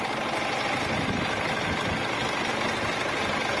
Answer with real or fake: real